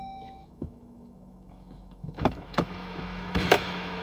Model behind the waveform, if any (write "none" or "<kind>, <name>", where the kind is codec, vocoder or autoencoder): autoencoder, DAC-VAE